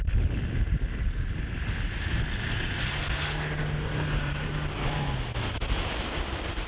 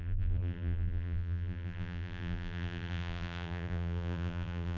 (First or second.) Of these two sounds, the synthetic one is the second